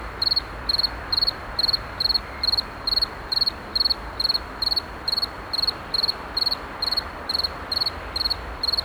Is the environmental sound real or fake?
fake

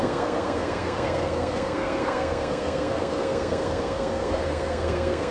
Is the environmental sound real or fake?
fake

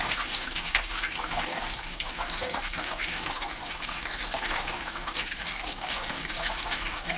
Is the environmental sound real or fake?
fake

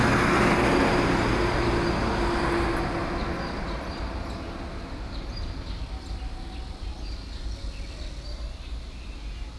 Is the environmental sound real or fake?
real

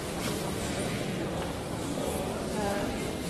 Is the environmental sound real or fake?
fake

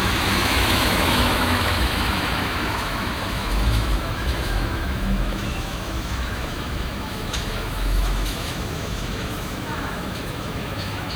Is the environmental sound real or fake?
fake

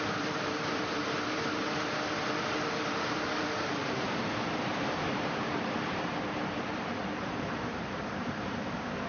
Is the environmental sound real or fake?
fake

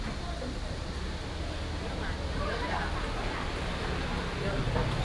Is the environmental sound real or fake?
real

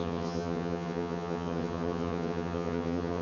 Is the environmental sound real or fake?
fake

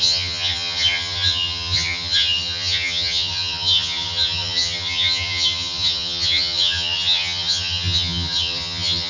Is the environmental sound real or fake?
fake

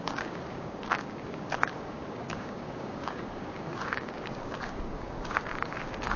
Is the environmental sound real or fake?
fake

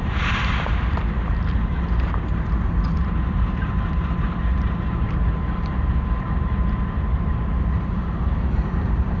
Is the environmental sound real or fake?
fake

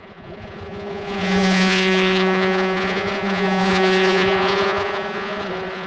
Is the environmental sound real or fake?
fake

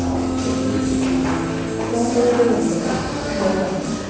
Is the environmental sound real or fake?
real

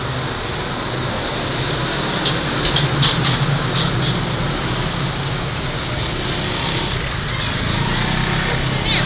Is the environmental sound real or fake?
real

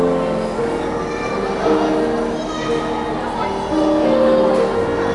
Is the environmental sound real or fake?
real